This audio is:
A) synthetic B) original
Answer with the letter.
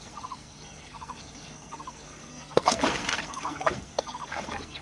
A